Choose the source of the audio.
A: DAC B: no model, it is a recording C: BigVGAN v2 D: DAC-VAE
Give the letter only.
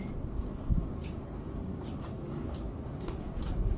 A